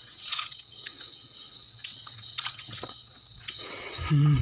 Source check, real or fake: fake